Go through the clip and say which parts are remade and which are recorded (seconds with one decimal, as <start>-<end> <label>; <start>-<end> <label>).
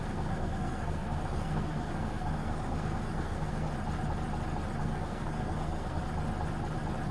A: 0.0-3.7 remade; 3.7-4.8 recorded; 4.8-6.0 remade; 6.0-7.1 recorded